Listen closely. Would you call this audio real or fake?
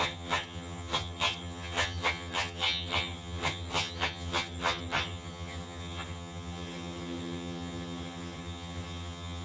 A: fake